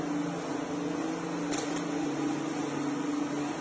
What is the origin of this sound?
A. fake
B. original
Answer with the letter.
B